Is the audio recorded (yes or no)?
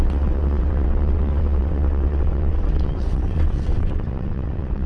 no